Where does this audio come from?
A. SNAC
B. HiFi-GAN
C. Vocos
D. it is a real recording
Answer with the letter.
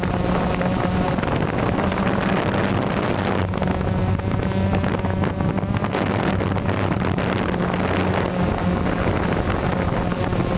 D